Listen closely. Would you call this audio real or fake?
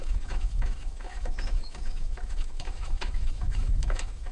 fake